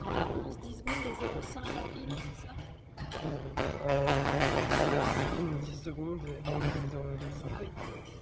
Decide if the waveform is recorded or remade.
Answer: remade